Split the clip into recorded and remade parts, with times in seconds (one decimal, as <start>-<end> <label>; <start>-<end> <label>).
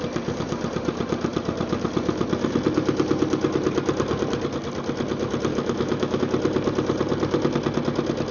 0.0-5.5 recorded; 5.5-6.2 remade; 6.2-8.3 recorded